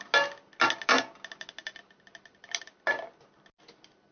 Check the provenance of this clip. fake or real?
real